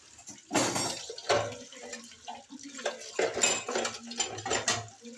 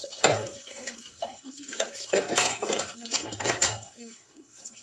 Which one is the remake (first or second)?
second